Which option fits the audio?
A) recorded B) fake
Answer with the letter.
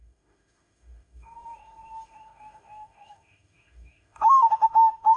B